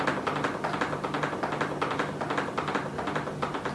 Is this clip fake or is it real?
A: real